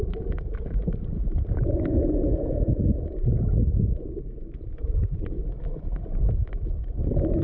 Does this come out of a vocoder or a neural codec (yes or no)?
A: no